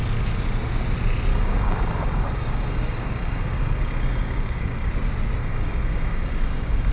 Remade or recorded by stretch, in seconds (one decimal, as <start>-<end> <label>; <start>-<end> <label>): 0.0-1.3 recorded; 1.3-4.9 remade; 4.9-5.4 recorded; 5.4-6.9 remade